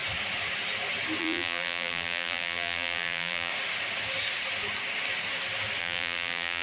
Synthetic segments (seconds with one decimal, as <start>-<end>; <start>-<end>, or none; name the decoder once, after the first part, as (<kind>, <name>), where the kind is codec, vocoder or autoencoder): 1.2-3.5 (vocoder, BigVGAN v2); 5.8-6.6